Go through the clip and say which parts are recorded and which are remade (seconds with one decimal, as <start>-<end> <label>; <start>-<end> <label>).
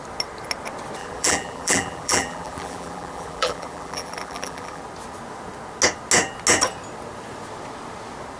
0.0-1.0 recorded; 1.0-4.8 remade; 4.8-8.4 recorded